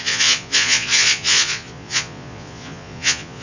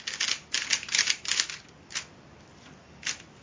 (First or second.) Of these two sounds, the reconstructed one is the first